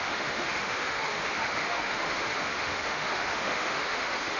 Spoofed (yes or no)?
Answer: yes